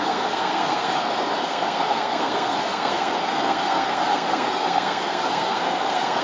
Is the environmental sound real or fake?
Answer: fake